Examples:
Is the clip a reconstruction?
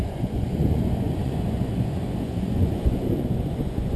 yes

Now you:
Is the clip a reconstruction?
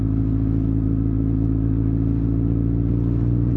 no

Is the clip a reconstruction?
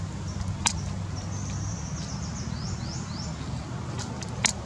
no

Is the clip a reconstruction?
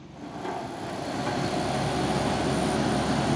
no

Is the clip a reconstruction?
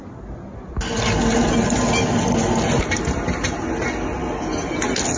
no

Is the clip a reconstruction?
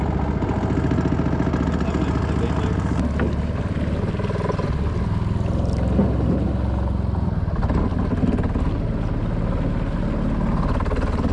no